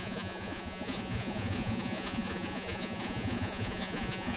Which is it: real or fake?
fake